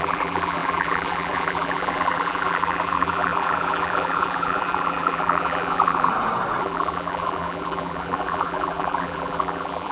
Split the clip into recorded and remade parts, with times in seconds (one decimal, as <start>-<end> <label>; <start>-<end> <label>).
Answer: 0.0-6.1 remade; 6.1-6.6 recorded; 6.6-9.9 remade